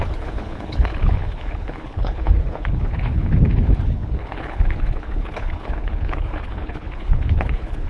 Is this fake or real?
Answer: fake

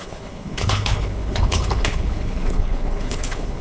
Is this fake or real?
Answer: fake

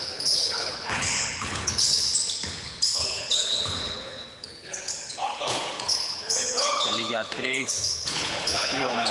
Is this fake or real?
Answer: fake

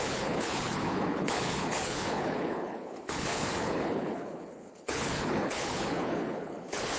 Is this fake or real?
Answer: fake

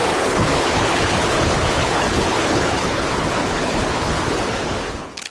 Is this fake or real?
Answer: fake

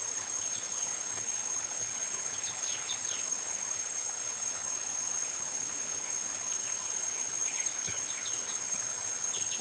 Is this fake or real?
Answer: fake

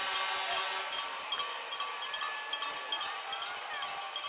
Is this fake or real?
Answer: real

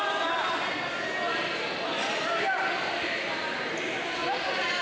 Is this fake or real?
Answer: real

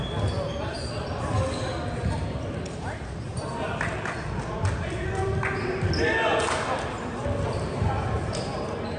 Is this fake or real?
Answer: real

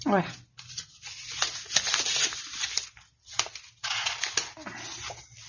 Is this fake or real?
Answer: real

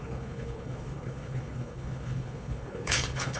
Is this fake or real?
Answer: fake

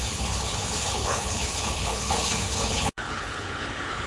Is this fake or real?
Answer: fake